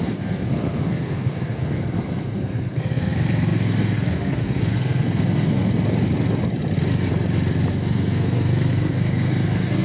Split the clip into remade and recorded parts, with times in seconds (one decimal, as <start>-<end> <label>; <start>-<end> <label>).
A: 0.0-5.6 remade; 5.6-7.7 recorded; 7.7-9.8 remade